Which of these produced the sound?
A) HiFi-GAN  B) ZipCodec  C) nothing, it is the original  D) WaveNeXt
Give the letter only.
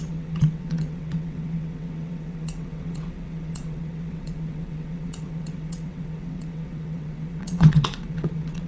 D